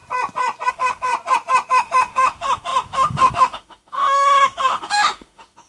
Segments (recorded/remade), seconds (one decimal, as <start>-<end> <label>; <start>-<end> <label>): 0.0-0.7 recorded; 0.7-1.1 remade; 1.1-1.7 recorded; 1.7-5.7 remade